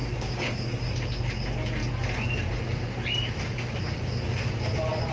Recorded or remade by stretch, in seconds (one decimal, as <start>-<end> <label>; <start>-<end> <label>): 0.0-0.9 remade; 0.9-5.1 recorded